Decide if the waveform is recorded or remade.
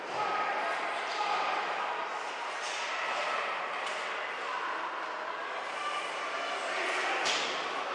recorded